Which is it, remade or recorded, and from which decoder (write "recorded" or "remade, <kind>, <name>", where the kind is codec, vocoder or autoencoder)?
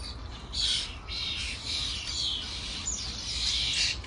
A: recorded